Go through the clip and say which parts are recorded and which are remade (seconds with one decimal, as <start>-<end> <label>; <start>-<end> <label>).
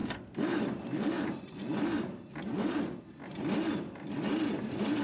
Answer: 0.0-5.0 recorded